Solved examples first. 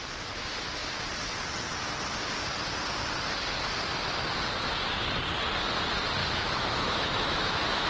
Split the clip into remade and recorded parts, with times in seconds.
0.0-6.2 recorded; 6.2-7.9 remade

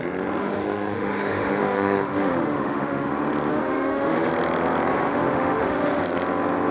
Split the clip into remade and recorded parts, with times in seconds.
0.0-0.4 recorded; 0.4-3.1 remade; 3.1-3.5 recorded; 3.5-4.3 remade; 4.3-4.9 recorded; 4.9-6.0 remade; 6.0-6.7 recorded

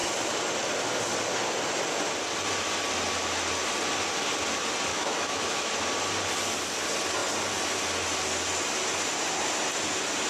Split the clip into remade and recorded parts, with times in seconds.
0.0-4.9 recorded; 4.9-5.7 remade; 5.7-10.3 recorded

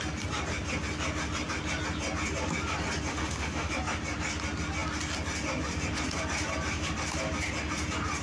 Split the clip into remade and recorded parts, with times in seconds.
0.0-3.1 recorded; 3.1-3.7 remade; 3.7-8.2 recorded

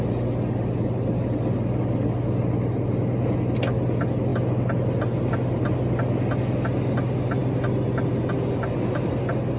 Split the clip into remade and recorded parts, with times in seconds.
0.0-9.6 recorded

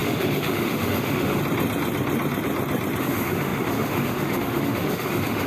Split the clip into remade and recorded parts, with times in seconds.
0.0-1.4 remade; 1.4-3.0 recorded; 3.0-5.5 remade

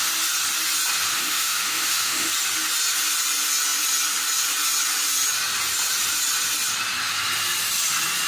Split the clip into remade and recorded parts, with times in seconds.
0.0-1.1 recorded; 1.1-2.3 remade; 2.3-8.3 recorded

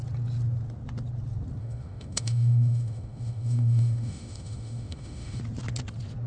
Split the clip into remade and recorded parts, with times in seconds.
0.0-1.6 recorded; 1.6-5.4 remade; 5.4-6.3 recorded